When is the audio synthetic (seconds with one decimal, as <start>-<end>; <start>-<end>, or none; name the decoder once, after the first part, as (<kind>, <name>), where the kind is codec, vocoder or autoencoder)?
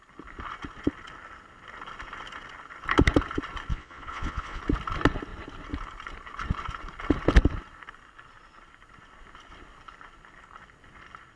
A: 3.7-4.6 (vocoder, Vocos)